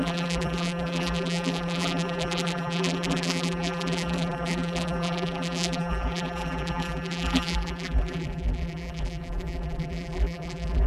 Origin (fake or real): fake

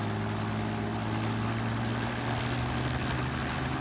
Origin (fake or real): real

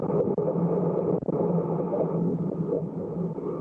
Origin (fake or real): real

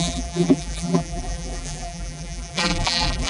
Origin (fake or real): fake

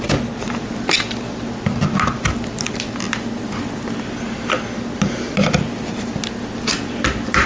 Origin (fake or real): real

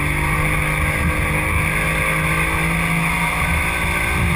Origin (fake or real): real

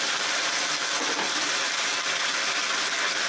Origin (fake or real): real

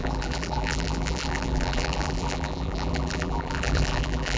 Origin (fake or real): fake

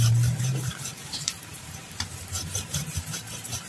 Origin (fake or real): fake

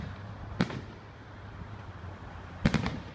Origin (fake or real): fake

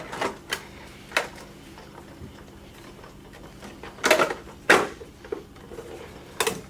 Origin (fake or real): real